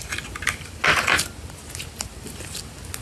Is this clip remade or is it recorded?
recorded